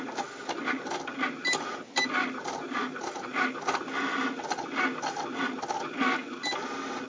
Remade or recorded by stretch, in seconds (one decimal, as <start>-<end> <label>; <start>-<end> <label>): 0.0-7.1 recorded